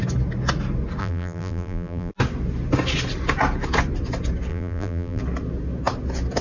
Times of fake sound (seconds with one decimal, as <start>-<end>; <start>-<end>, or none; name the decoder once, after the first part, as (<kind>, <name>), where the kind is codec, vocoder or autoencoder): 1.0-2.1 (vocoder, BigVGAN v2); 4.5-5.2